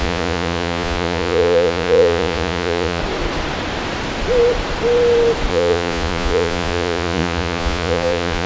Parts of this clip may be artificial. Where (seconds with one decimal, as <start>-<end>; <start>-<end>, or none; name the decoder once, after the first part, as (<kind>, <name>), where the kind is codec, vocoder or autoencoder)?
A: 0.0-3.0 (vocoder, Vocos); 5.5-8.5